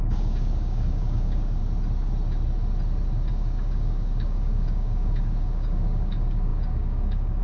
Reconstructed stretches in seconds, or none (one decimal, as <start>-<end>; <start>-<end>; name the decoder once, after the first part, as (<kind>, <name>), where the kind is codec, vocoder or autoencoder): 0.0-1.6 (codec, DAC); 3.3-7.4